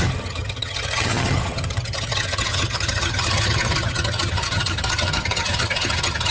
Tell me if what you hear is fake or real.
fake